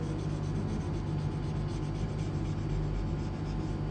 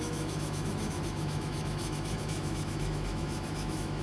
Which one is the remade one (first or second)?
second